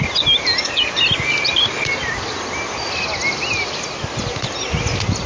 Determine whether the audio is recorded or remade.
recorded